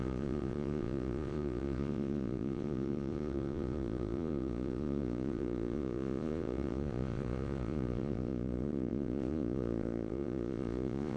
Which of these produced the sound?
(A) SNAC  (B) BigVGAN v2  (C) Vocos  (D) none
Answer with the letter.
C